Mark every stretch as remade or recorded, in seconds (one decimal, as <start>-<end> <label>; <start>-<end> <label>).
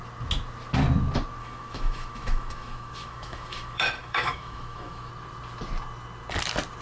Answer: 0.0-1.4 recorded; 1.4-5.1 remade; 5.1-6.8 recorded